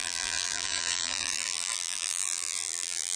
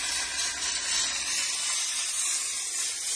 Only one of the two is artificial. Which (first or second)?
first